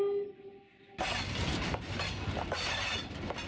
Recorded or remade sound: recorded